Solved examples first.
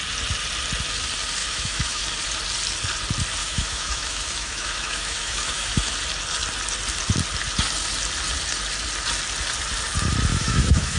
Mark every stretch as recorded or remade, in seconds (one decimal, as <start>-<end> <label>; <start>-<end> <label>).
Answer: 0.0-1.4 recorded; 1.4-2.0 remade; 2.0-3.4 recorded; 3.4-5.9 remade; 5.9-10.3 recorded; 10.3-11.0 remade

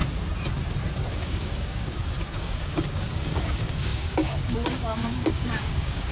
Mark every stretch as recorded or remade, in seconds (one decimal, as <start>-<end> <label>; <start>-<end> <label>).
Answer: 0.0-1.1 recorded; 1.1-6.1 remade

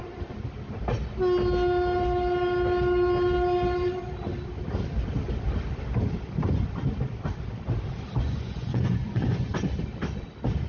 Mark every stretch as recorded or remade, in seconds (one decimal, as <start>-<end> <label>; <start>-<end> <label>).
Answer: 0.0-8.2 recorded; 8.2-9.5 remade; 9.5-10.7 recorded